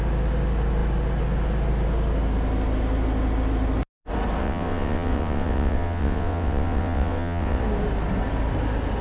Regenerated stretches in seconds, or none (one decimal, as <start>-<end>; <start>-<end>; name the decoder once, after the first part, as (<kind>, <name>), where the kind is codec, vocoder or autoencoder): 4.4-7.6 (vocoder, WaveNeXt)